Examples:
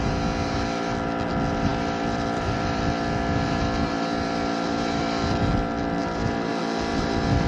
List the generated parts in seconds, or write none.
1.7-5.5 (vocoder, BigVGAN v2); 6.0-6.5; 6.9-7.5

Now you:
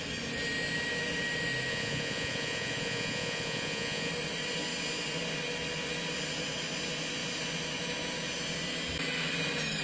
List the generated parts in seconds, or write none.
1.7-4.1 (vocoder, Vocos)

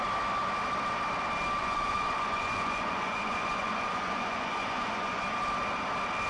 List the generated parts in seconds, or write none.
1.6-5.2 (vocoder, Vocos)

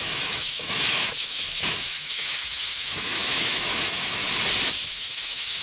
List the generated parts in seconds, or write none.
0.0-4.2 (autoencoder, DAC-VAE); 4.9-5.6

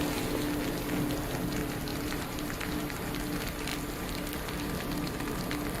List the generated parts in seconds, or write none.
1.9-3.1 (vocoder, BigVGAN v2)

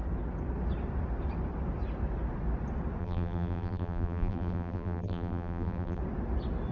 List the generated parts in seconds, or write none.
3.0-6.0 (vocoder, BigVGAN v2)

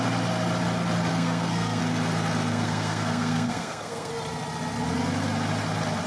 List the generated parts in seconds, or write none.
1.1-1.8 (codec, SNAC); 2.5-4.1